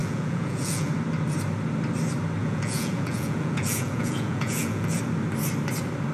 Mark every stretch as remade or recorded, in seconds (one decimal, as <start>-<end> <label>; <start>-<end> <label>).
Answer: 0.0-0.9 remade; 0.9-2.4 recorded; 2.4-5.0 remade; 5.0-6.1 recorded